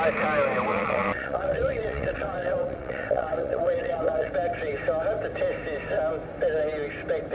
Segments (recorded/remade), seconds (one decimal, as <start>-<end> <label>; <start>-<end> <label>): 0.0-0.7 recorded; 0.7-4.3 remade; 4.3-7.3 recorded